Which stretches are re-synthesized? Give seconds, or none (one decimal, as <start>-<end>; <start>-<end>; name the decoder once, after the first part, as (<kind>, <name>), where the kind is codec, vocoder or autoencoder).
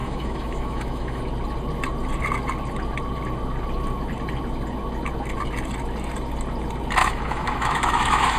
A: 0.0-1.2 (autoencoder, DAC-VAE); 7.0-8.4